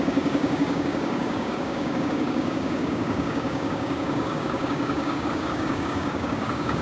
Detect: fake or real fake